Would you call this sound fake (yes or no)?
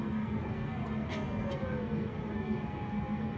yes